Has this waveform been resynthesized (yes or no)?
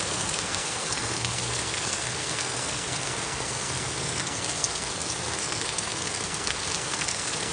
yes